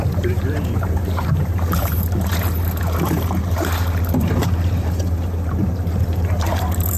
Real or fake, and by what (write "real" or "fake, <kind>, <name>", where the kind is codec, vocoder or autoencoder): fake, vocoder, BigVGAN v2